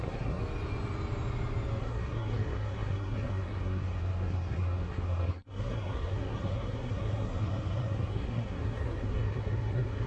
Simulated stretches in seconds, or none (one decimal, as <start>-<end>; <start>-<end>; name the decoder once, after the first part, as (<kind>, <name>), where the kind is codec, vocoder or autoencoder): 0.0-0.4 (codec, SNAC); 1.8-10.1